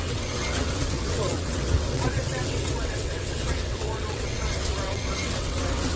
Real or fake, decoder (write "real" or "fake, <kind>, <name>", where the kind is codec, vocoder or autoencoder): fake, vocoder, WaveNeXt